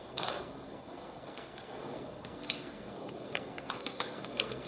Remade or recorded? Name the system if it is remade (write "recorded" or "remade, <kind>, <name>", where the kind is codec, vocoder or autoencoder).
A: remade, codec, SNAC